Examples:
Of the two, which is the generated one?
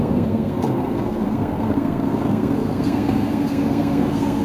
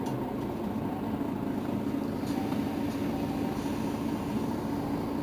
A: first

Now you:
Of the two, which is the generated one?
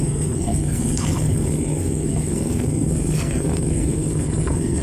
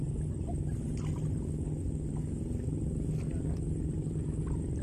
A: first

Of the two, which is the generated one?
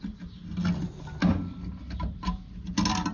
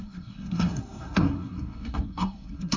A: second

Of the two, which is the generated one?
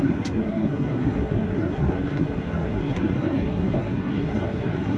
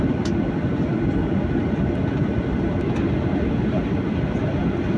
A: first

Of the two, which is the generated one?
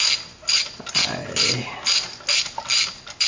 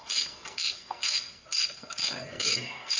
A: second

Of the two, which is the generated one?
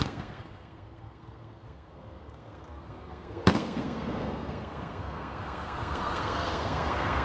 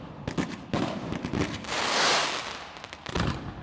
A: first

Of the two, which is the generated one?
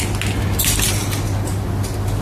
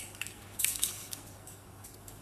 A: second